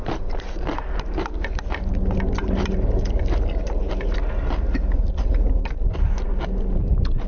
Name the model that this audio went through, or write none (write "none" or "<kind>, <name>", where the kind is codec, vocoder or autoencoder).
vocoder, BigVGAN v2